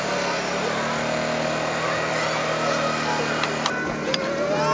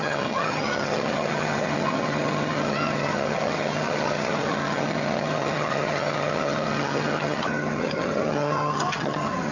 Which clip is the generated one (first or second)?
second